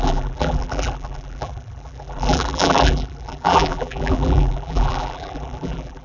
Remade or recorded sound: remade